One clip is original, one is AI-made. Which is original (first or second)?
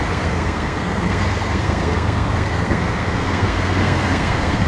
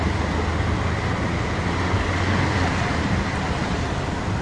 second